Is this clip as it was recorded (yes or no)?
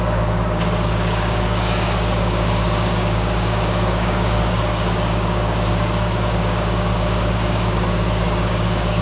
no